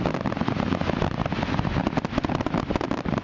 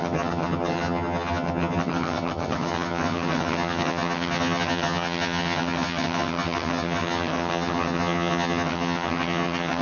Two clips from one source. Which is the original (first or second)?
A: first